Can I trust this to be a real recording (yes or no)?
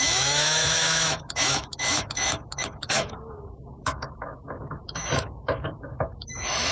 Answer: no